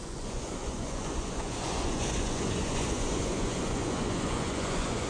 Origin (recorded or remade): remade